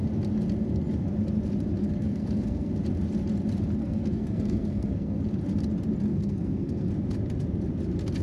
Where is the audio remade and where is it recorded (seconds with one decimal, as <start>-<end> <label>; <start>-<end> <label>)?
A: 0.0-1.8 recorded; 1.8-2.7 remade; 2.7-3.8 recorded; 3.8-5.2 remade; 5.2-6.1 recorded; 6.1-6.9 remade; 6.9-8.2 recorded